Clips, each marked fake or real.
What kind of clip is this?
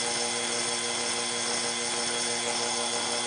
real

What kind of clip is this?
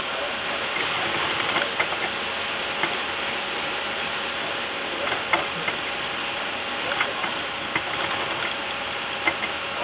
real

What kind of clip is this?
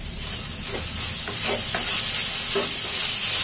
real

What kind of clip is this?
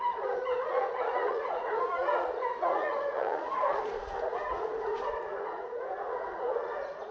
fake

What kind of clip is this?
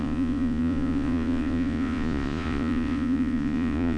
fake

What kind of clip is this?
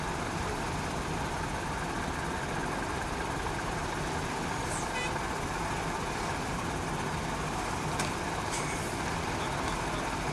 real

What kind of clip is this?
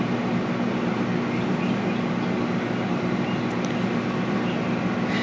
real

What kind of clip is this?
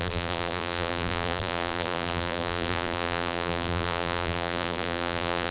fake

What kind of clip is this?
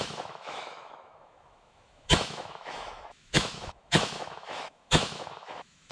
fake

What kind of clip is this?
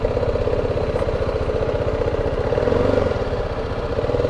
real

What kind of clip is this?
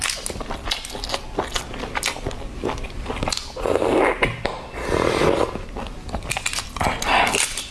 real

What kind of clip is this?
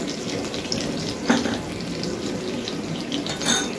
real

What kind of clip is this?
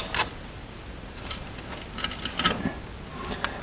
real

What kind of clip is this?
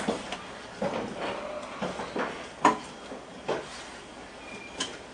real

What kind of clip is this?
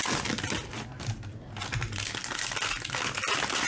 real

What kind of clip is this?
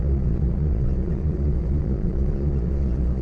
fake